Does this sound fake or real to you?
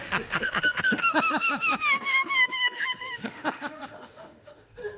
fake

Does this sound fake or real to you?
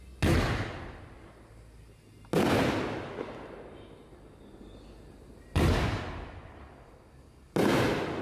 real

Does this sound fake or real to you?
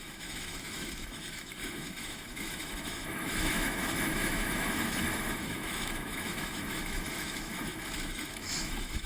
fake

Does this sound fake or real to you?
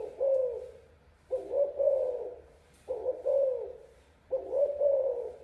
real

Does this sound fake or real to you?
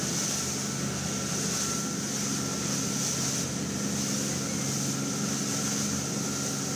real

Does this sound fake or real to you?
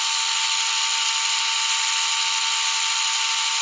real